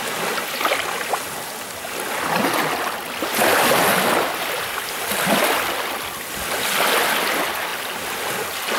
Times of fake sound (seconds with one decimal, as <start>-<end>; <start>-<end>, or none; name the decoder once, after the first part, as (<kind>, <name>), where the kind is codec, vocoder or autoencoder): none